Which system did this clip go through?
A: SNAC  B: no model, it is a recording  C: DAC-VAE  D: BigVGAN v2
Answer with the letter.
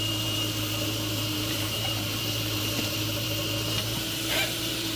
D